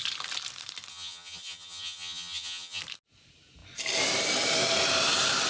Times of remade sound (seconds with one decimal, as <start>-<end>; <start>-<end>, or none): 0.9-2.8